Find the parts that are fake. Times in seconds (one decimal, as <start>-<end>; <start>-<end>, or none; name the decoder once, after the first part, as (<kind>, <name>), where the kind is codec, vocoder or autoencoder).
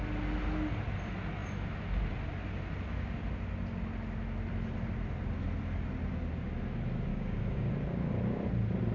7.1-7.7 (codec, DAC)